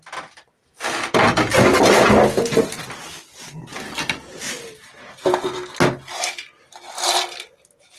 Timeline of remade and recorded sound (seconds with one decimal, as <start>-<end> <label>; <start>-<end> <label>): 0.0-8.0 recorded